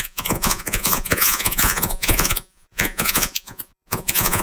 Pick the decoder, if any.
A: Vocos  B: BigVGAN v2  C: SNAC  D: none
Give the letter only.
A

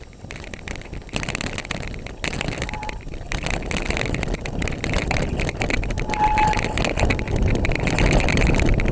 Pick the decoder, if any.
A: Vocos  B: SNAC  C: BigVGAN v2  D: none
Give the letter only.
D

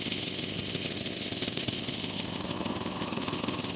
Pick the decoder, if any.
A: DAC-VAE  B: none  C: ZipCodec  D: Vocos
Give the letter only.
C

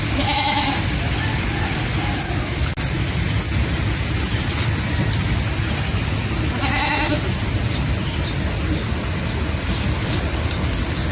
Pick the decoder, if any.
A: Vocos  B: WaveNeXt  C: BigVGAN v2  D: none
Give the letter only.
D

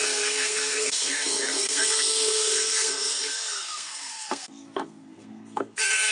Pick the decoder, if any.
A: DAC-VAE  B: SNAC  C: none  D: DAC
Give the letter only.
B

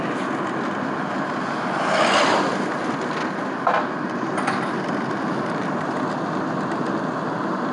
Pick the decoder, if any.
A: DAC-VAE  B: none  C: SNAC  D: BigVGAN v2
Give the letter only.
B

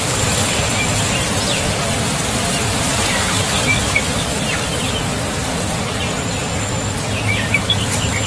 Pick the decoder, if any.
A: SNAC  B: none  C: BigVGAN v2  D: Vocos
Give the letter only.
C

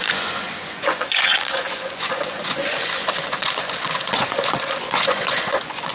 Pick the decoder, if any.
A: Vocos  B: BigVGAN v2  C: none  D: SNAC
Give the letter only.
A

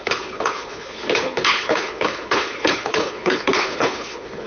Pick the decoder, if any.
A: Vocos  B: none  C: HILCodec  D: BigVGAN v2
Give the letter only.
C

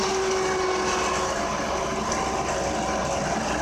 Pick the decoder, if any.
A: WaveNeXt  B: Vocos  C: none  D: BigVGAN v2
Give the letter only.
C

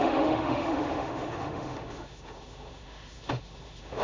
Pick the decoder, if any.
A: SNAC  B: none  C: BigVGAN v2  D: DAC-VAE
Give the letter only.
D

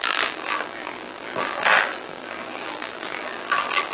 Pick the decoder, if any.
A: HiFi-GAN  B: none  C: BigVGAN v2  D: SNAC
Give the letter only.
C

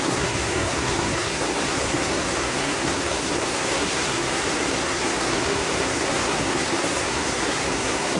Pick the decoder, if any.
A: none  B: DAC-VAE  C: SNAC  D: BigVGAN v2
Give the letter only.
C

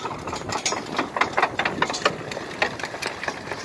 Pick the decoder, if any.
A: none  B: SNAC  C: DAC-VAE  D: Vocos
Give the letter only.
A